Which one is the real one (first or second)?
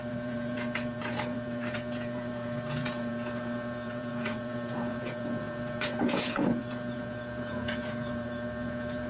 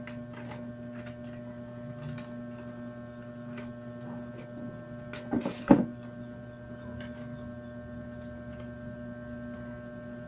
second